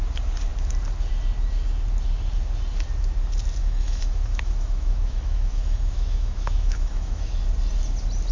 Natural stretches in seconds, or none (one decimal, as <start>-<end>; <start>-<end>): 0.0-3.6; 7.4-8.3